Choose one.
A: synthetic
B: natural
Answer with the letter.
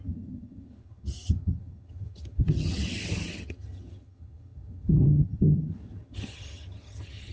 A